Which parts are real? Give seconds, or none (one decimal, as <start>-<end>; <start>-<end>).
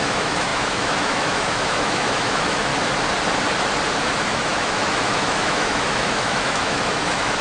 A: 2.7-3.9